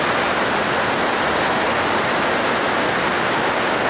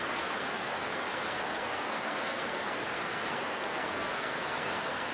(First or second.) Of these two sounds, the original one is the first